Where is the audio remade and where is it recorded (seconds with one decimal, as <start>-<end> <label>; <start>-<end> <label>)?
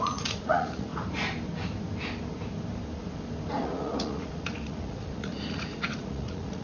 0.0-0.9 remade; 0.9-3.5 recorded; 3.5-6.6 remade